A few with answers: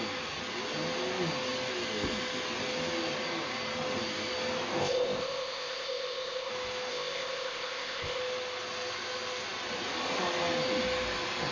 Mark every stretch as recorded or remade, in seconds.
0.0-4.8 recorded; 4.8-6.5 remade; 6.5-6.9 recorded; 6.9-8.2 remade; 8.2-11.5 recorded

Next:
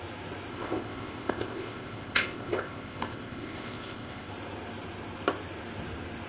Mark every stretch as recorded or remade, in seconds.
0.0-0.5 recorded; 0.5-4.3 remade; 4.3-6.3 recorded

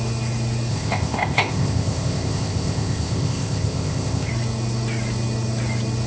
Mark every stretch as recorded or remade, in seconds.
0.0-0.7 recorded; 0.7-4.3 remade; 4.3-6.1 recorded

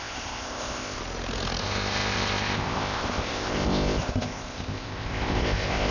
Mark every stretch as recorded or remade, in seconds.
0.0-1.0 remade; 1.0-1.6 recorded; 1.6-5.9 remade

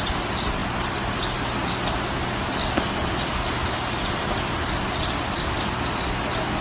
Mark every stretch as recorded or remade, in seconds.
0.0-6.6 recorded

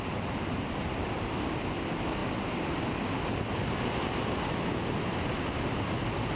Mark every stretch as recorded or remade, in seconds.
0.0-6.4 recorded

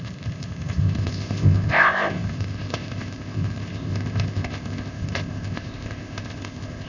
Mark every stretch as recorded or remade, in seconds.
0.0-6.9 remade